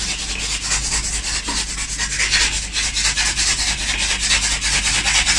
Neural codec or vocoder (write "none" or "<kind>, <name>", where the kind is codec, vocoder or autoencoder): none